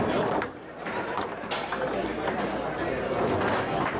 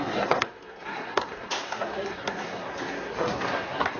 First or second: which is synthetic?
second